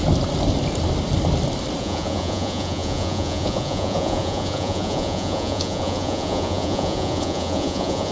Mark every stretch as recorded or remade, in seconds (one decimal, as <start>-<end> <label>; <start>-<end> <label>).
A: 0.0-1.8 recorded; 1.8-8.1 remade